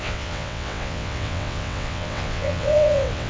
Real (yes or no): no